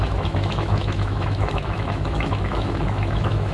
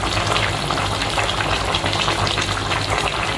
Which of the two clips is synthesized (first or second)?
first